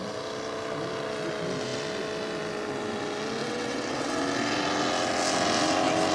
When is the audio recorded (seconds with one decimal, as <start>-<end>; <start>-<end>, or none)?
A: 0.0-3.4; 4.2-6.1